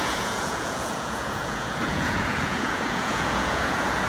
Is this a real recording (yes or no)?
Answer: no